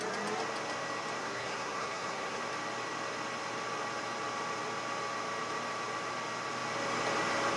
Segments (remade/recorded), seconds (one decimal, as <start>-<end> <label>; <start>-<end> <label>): 0.0-1.2 recorded; 1.2-2.4 remade; 2.4-7.6 recorded